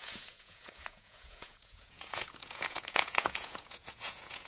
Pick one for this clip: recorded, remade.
remade